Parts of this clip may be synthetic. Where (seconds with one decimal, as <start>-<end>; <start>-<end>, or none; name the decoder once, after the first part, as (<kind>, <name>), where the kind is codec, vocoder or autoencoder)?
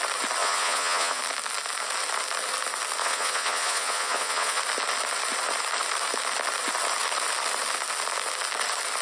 0.4-1.2 (vocoder, Vocos); 3.0-4.6